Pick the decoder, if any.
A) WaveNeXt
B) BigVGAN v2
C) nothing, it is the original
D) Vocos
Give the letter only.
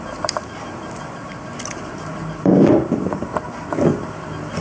C